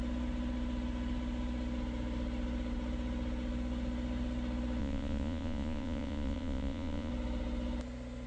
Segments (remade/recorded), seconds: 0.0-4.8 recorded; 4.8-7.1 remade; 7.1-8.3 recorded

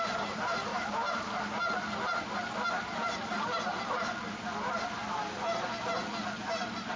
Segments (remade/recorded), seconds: 0.0-7.0 recorded

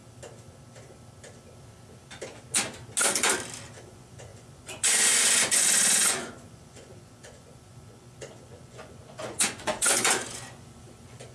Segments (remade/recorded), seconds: 0.0-3.8 recorded; 3.8-11.3 remade